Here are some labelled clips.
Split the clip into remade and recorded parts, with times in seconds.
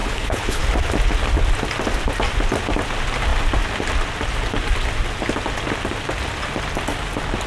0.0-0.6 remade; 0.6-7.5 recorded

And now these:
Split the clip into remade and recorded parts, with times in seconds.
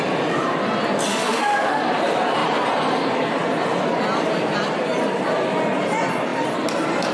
0.0-1.1 recorded; 1.1-1.8 remade; 1.8-7.1 recorded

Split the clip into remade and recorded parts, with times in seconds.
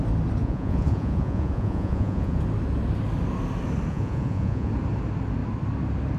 0.0-0.4 recorded; 0.4-2.4 remade; 2.4-3.9 recorded; 3.9-4.7 remade; 4.7-6.2 recorded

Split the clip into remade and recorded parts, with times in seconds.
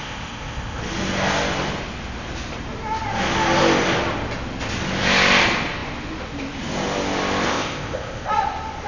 0.0-0.8 remade; 0.8-7.5 recorded; 7.5-8.3 remade; 8.3-8.9 recorded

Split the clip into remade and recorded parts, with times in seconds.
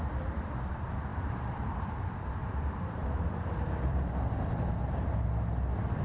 0.0-1.1 recorded; 1.1-1.9 remade; 1.9-2.4 recorded; 2.4-4.1 remade; 4.1-6.0 recorded